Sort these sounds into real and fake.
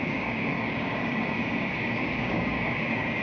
fake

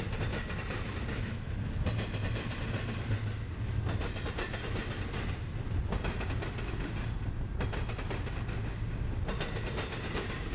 real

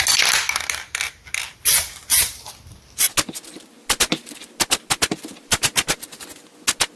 real